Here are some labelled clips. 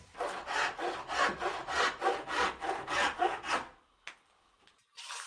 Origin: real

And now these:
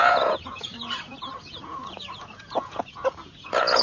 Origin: fake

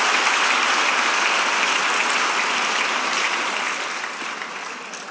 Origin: real